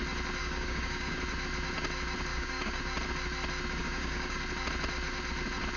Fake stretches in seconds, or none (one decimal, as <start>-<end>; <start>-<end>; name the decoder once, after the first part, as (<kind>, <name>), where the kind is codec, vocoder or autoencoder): 0.4-1.2 (codec, DAC); 2.3-2.8; 3.8-4.4

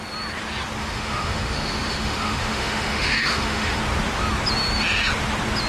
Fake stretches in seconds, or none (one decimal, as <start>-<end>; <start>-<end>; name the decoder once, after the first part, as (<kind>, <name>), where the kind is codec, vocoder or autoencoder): 0.8-3.8 (autoencoder, DAC-VAE)

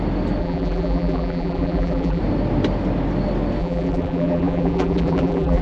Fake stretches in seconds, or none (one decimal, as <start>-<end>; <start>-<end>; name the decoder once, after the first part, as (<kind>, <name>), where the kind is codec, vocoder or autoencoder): 0.4-2.2 (vocoder, BigVGAN v2); 3.6-5.6

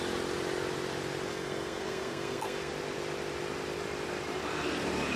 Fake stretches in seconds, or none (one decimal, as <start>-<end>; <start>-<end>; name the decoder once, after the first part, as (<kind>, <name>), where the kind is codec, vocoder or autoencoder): 1.3-2.7 (codec, SNAC)

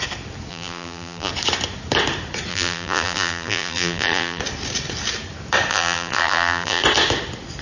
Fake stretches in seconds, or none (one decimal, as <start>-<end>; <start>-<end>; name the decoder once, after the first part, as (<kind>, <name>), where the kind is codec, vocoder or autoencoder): 0.5-1.3 (vocoder, BigVGAN v2); 2.5-4.4; 5.7-6.8

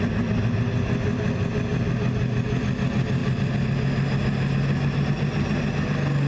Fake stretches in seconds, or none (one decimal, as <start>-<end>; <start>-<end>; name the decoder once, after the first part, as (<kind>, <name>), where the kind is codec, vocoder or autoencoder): none